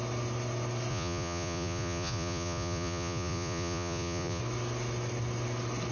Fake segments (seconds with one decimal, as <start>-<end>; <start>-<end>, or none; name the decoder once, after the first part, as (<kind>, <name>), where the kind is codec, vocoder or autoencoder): 0.9-4.4 (vocoder, Vocos)